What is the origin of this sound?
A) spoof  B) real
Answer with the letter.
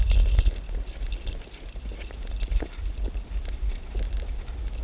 B